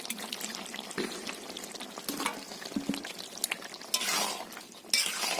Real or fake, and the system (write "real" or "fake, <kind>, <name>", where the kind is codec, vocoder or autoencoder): real